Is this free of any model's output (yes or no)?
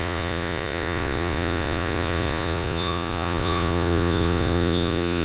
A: no